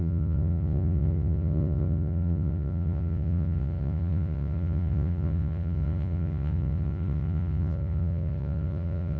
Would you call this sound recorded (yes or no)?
no